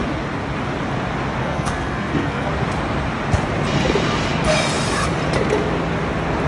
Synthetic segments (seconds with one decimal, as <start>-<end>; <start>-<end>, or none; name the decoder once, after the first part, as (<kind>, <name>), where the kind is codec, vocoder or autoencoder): 1.4-2.5 (codec, SNAC)

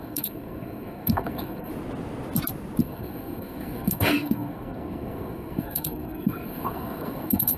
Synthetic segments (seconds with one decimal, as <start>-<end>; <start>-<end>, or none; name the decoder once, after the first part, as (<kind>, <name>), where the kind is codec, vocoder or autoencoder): 0.0-1.7 (codec, SNAC); 2.8-7.6

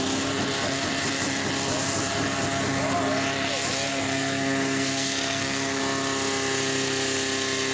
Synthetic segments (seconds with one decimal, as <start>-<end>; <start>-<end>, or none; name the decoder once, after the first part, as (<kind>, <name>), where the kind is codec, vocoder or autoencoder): 3.9-5.8 (codec, SNAC)

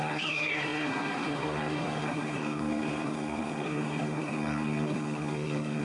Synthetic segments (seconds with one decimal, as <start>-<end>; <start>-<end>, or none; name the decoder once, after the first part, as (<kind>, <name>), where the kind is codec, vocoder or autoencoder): 0.0-5.8 (codec, SNAC)